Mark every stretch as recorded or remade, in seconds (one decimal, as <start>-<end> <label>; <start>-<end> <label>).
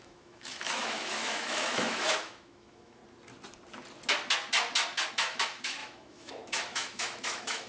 0.0-3.0 remade; 3.0-5.1 recorded; 5.1-7.7 remade